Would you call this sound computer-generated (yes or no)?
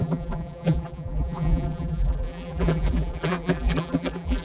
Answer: yes